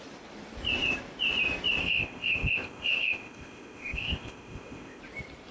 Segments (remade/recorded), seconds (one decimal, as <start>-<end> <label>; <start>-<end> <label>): 0.0-1.8 recorded; 1.8-5.0 remade; 5.0-5.5 recorded